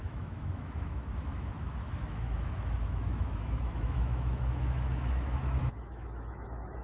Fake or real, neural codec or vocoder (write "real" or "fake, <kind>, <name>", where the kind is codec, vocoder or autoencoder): fake, autoencoder, DAC-VAE